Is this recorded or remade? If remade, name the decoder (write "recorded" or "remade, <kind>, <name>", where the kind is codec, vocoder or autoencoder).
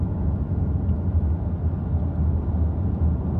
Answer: recorded